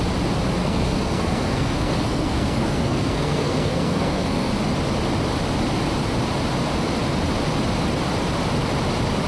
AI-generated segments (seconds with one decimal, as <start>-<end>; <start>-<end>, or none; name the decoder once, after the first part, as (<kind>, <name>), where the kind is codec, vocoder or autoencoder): 0.6-4.5 (codec, SNAC)